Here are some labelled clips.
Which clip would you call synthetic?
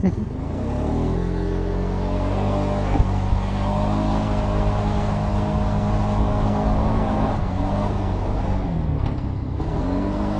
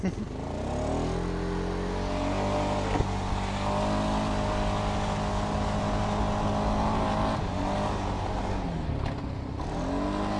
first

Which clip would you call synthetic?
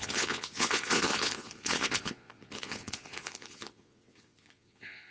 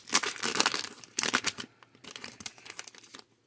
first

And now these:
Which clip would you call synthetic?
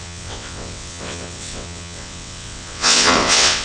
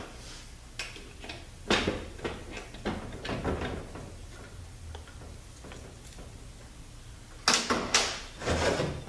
first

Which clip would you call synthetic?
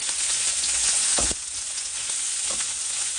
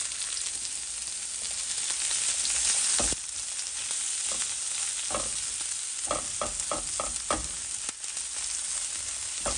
first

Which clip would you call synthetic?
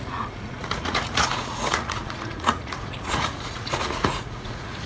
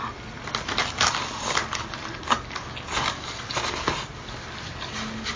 first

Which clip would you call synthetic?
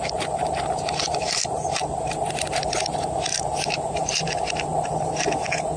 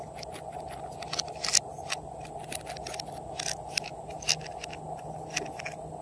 first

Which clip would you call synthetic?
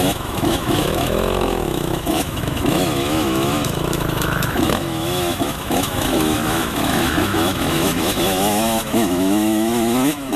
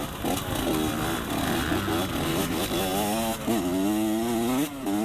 first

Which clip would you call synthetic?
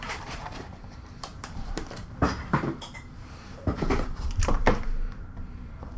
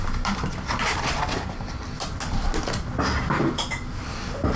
first